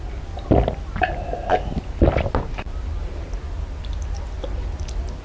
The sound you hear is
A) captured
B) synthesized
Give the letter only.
A